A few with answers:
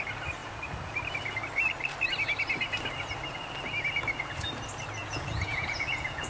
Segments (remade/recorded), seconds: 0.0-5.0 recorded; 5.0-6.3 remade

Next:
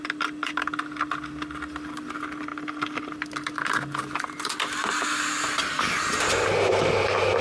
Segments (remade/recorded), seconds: 0.0-7.4 recorded